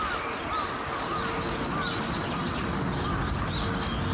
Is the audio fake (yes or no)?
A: no